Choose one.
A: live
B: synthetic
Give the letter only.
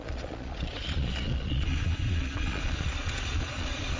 B